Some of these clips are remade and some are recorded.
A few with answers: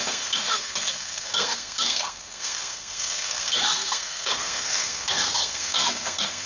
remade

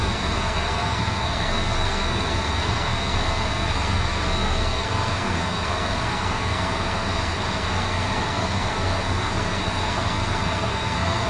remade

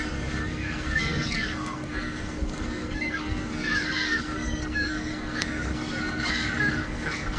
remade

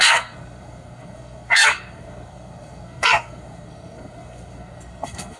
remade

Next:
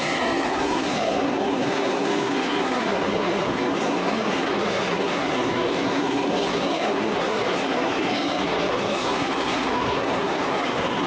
remade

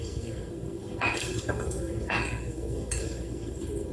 remade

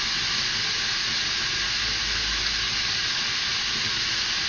recorded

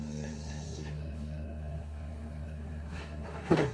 remade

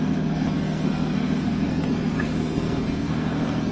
remade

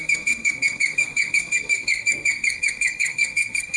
remade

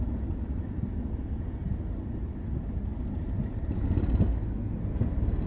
recorded